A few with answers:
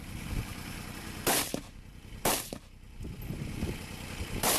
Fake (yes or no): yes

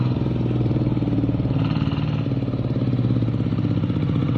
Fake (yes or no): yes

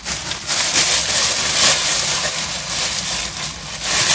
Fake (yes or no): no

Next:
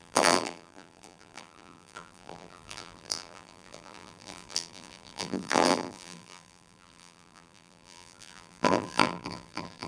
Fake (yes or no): yes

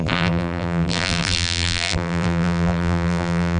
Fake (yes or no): yes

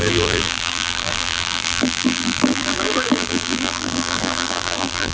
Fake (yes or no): yes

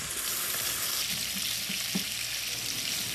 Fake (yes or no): no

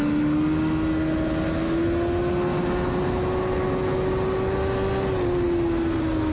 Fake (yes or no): no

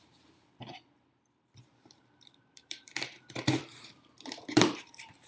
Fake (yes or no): yes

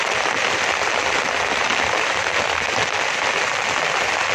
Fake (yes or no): no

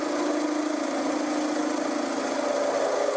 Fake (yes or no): no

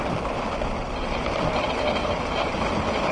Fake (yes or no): yes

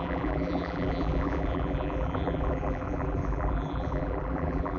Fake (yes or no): yes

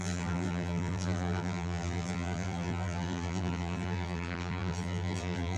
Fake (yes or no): yes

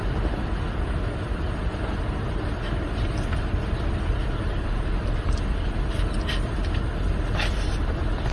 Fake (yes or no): yes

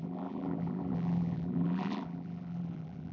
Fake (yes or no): yes